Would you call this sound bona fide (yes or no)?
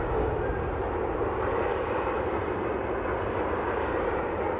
yes